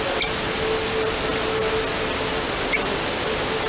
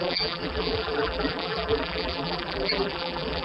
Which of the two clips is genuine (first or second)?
first